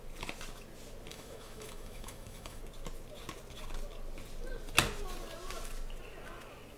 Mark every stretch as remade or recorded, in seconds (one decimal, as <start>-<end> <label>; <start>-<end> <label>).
0.0-1.1 recorded; 1.1-2.6 remade; 2.6-6.8 recorded